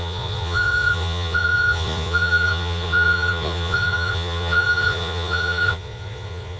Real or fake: fake